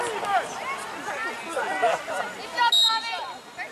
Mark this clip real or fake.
real